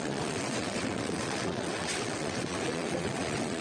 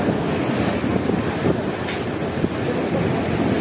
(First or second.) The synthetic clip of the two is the first